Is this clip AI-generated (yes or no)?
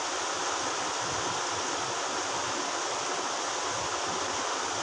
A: no